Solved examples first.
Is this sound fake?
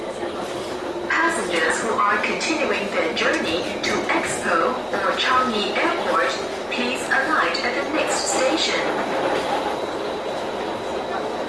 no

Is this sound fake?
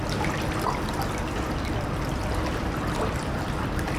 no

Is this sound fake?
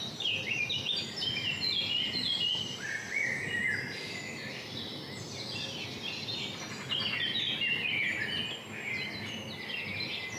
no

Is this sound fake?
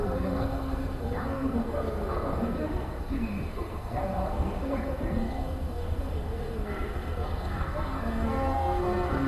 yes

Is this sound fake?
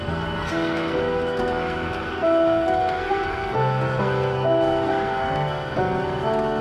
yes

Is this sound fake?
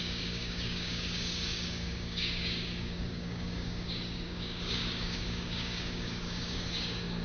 yes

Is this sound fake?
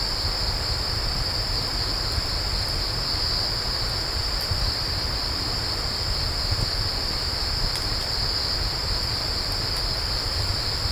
yes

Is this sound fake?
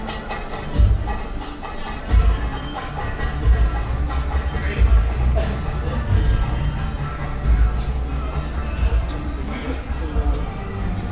no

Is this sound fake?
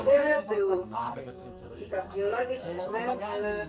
yes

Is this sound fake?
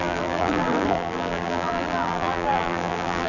yes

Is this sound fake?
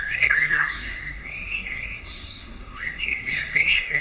yes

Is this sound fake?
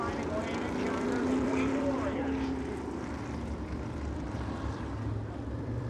yes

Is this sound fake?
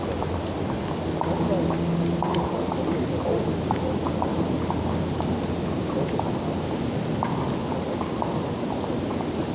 no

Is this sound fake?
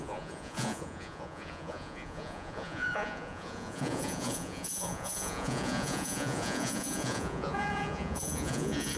yes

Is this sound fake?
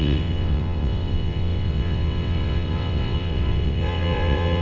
yes